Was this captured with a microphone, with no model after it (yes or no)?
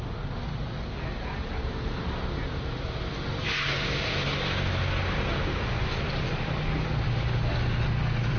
yes